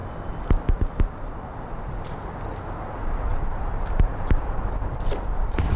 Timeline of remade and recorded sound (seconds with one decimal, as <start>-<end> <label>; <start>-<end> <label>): 0.0-3.3 recorded; 3.3-5.8 remade